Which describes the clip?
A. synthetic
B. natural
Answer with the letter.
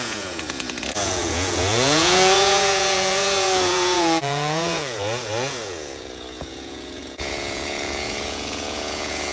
A